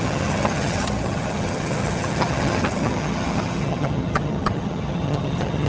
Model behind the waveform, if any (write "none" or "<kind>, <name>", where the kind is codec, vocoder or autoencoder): vocoder, HiFi-GAN